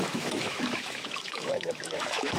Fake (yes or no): yes